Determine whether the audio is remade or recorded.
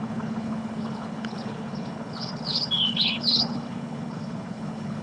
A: remade